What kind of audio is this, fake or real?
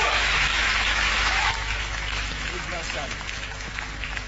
fake